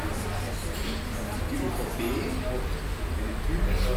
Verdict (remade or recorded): recorded